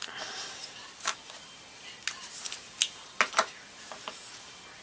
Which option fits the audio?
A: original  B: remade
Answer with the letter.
A